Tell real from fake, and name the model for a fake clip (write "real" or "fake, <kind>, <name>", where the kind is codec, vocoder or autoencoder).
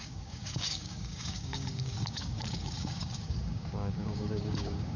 fake, codec, DAC